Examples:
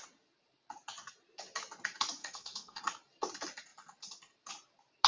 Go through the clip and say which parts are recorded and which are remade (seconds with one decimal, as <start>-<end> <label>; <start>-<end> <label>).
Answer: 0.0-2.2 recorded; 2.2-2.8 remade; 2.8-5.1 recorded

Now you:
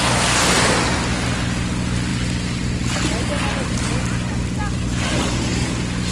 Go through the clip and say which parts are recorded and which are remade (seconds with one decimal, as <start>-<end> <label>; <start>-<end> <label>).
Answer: 0.0-6.1 recorded

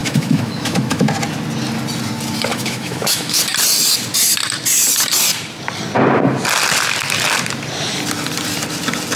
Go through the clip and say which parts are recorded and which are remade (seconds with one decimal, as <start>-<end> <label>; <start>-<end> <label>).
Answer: 0.0-1.1 remade; 1.1-2.5 recorded; 2.5-3.4 remade; 3.4-9.2 recorded

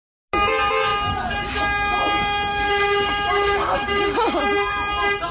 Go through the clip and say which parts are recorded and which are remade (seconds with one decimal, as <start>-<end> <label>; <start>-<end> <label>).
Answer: 0.0-2.5 recorded; 2.5-4.4 remade; 4.4-5.3 recorded

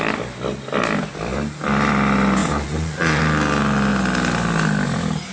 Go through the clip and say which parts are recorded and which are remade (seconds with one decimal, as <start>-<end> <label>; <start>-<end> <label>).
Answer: 0.0-2.4 recorded; 2.4-3.2 remade; 3.2-5.3 recorded

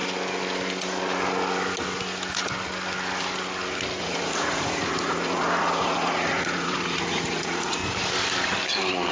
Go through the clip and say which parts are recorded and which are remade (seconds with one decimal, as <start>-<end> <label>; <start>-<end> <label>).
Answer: 0.0-4.0 recorded; 4.0-7.8 remade; 7.8-9.1 recorded

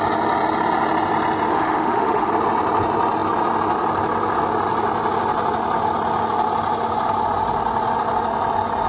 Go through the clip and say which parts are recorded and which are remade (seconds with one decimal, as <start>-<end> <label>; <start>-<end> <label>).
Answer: 0.0-1.5 recorded; 1.5-2.3 remade; 2.3-8.9 recorded